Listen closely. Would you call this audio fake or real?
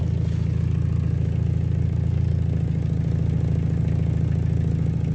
real